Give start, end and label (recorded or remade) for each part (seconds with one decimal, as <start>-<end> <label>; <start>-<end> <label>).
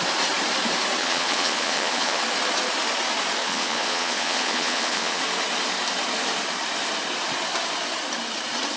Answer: 0.0-1.0 recorded; 1.0-2.2 remade; 2.2-3.4 recorded; 3.4-5.2 remade; 5.2-8.8 recorded